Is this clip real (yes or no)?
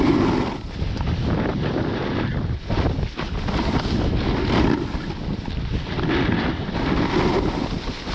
yes